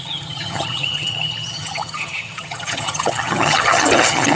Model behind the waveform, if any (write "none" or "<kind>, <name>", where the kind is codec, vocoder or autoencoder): vocoder, HiFi-GAN